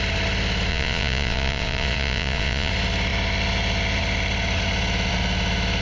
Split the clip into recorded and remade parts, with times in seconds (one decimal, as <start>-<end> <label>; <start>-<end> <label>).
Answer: 0.0-0.7 recorded; 0.7-2.7 remade; 2.7-5.8 recorded